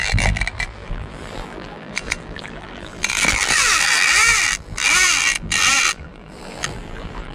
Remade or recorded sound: remade